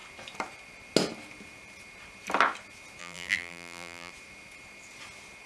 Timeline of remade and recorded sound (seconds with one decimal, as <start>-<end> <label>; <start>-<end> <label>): 0.0-3.0 recorded; 3.0-4.1 remade; 4.1-5.5 recorded